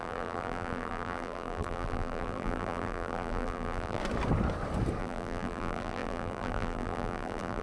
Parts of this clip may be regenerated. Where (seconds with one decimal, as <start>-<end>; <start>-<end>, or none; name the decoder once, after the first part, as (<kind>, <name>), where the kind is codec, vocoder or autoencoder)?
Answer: 0.0-4.0 (vocoder, BigVGAN v2); 5.0-7.6